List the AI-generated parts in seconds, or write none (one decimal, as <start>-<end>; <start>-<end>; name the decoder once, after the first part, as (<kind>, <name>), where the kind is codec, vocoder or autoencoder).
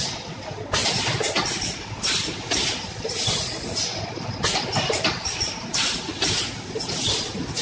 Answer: none